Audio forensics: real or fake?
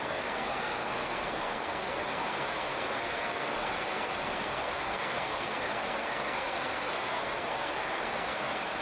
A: fake